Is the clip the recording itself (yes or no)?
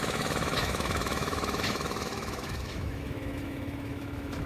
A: no